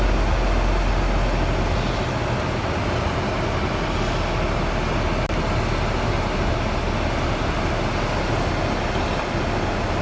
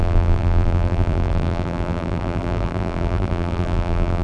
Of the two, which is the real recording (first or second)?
first